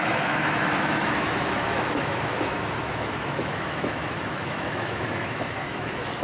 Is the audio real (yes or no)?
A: no